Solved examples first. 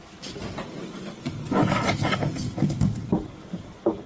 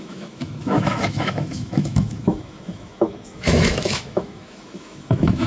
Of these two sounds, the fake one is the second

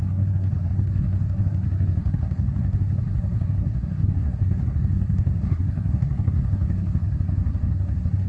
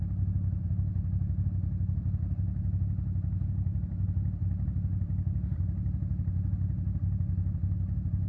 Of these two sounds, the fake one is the first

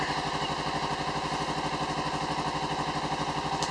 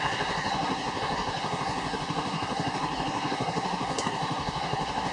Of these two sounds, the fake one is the second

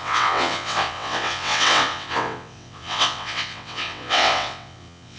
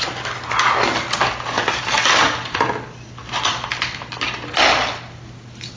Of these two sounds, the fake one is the first